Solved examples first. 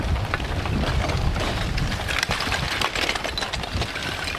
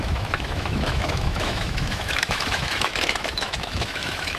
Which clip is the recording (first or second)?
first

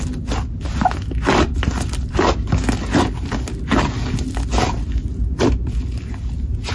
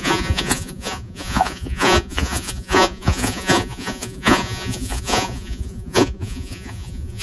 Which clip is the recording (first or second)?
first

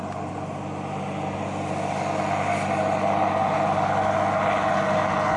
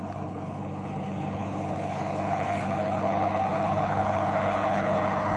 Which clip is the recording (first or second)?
first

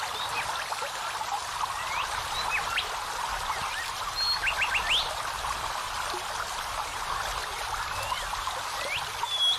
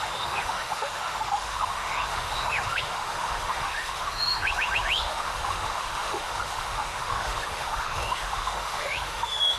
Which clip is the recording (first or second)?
first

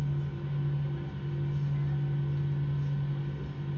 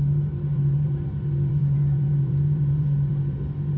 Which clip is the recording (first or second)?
first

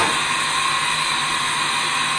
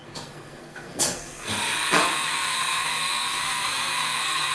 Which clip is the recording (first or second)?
first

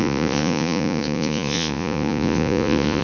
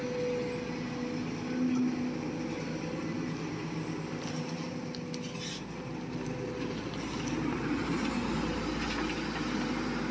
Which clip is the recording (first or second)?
second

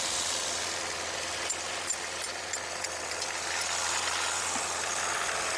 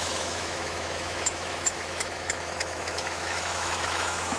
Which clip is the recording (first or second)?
first